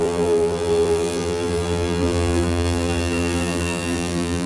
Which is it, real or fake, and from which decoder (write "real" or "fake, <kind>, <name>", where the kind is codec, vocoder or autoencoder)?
fake, vocoder, BigVGAN v2